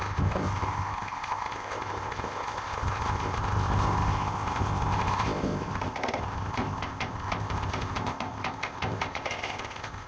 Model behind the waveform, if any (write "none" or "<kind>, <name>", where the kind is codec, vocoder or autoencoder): codec, ZipCodec